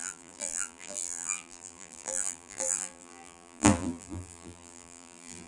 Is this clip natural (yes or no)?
no